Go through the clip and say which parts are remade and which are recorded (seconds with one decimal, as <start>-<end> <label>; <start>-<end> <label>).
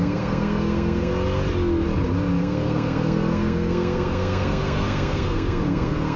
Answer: 0.0-1.1 remade; 1.1-2.4 recorded; 2.4-6.2 remade